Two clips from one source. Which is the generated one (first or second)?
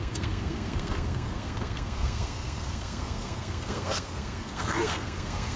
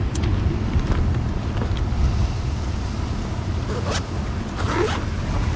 first